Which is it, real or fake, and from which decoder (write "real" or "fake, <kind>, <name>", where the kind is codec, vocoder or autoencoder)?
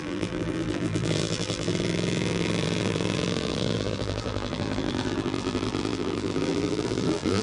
fake, vocoder, BigVGAN v2